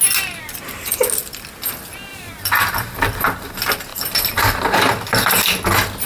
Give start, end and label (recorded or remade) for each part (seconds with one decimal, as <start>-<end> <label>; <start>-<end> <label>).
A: 0.0-2.1 recorded; 2.1-3.5 remade; 3.5-3.9 recorded; 3.9-4.9 remade; 4.9-6.1 recorded